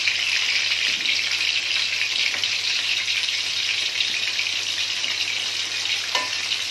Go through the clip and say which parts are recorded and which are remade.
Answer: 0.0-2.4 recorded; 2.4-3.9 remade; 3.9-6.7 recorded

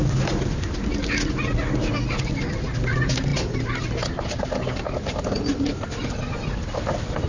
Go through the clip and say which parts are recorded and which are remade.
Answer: 0.0-7.3 recorded

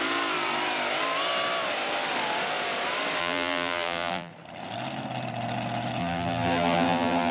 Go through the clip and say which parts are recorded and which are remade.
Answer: 0.0-3.2 recorded; 3.2-4.3 remade; 4.3-6.0 recorded; 6.0-7.3 remade